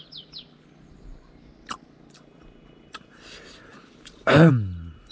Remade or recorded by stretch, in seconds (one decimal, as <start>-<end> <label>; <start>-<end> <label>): 0.0-3.7 recorded; 3.7-4.5 remade; 4.5-5.1 recorded